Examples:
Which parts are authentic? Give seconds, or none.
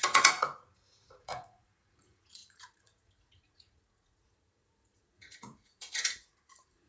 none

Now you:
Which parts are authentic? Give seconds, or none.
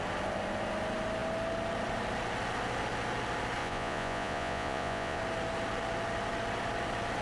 0.0-3.6; 5.2-7.2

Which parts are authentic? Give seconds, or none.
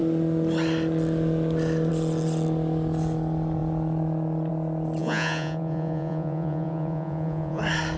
0.0-5.0; 7.6-8.0